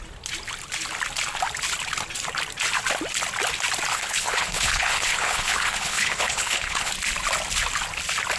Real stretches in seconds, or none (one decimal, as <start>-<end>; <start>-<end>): 0.0-3.9; 6.9-8.4